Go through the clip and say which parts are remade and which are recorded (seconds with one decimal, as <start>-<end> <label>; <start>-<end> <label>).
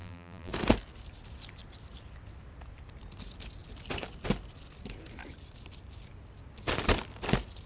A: 0.0-0.5 remade; 0.5-7.7 recorded